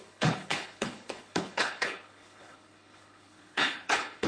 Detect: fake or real fake